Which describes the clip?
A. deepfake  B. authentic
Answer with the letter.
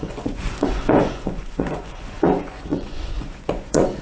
A